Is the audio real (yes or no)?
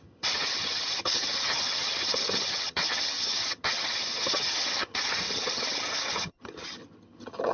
no